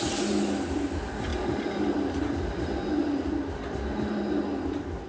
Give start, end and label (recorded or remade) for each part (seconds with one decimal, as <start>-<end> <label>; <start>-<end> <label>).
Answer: 0.0-5.1 recorded